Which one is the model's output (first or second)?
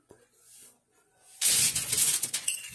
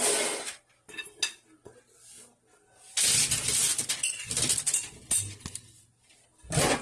first